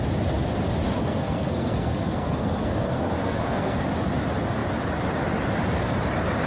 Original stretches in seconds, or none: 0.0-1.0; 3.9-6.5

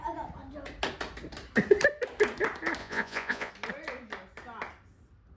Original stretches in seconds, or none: 0.0-2.8; 3.5-5.4

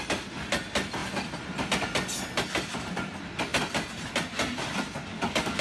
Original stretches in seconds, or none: 0.0-5.1

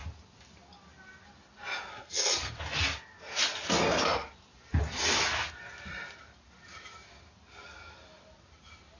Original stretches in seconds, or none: 0.0-1.9; 2.6-9.0

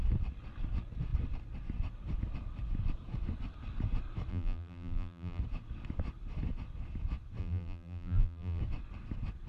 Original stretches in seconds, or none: 0.0-4.3; 5.4-7.4; 8.6-9.5

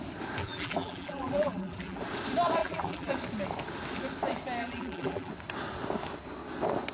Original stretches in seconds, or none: 0.0-0.4; 2.0-2.6; 3.1-4.6; 5.3-6.9

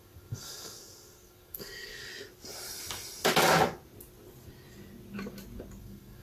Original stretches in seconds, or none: 2.1-5.8